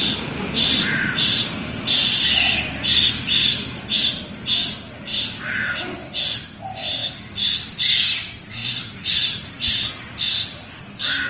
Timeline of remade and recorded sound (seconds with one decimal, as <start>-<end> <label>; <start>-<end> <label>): 0.0-11.3 recorded